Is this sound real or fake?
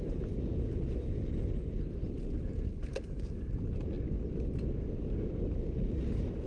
real